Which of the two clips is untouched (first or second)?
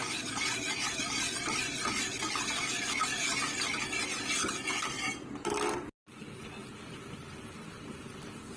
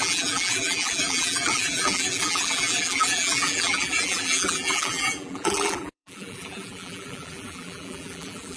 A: first